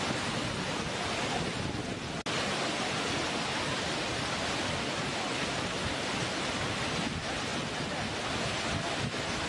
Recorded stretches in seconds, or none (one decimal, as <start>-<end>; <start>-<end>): 0.0-9.5